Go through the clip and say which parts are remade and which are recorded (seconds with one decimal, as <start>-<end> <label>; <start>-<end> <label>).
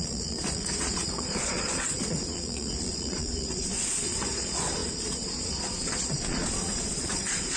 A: 0.0-7.6 remade